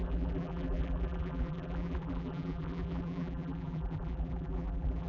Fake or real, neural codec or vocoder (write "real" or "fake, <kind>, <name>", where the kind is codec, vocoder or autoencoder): fake, vocoder, BigVGAN v2